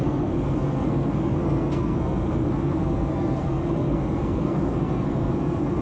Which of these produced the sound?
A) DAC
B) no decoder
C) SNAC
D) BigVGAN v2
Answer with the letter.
C